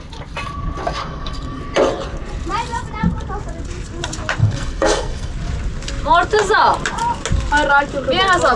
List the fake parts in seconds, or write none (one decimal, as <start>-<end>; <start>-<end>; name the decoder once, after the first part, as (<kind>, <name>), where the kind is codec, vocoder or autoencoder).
1.0-1.6 (codec, SNAC); 4.4-5.3